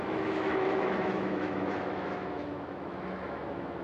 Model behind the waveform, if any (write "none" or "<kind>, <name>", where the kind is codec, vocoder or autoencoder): autoencoder, DAC-VAE